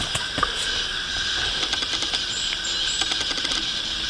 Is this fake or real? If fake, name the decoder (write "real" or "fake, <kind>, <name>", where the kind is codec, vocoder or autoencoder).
real